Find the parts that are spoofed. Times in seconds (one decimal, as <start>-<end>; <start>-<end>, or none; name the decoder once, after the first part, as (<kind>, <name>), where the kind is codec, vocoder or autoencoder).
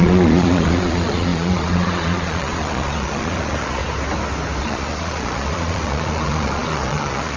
0.0-3.8 (vocoder, Vocos); 4.6-7.4